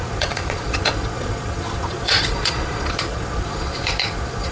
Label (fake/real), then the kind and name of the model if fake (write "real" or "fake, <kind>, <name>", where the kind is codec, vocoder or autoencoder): fake, vocoder, Vocos